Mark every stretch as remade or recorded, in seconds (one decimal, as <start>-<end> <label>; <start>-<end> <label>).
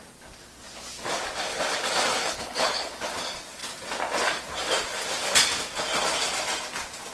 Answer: 0.0-2.1 recorded; 2.1-2.9 remade; 2.9-7.1 recorded